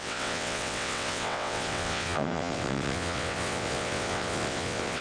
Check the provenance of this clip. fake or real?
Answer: fake